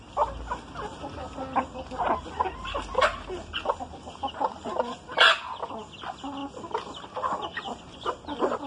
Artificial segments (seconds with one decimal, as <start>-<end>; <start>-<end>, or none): none

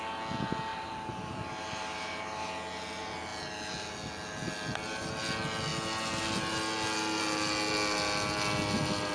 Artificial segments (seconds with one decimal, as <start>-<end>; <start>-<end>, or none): 0.7-2.5

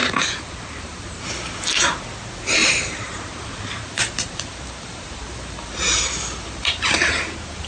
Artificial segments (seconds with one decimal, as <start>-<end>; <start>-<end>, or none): 0.0-1.3; 2.6-7.2

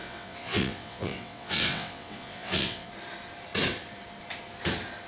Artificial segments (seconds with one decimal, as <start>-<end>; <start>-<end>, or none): 0.0-2.9

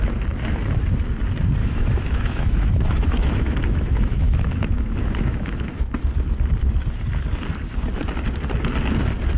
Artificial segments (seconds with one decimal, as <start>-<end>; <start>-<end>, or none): 1.6-6.0

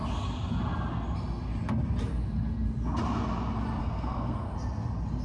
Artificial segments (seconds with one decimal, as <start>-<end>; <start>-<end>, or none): 3.8-4.5